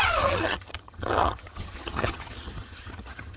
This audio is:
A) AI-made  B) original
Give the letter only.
A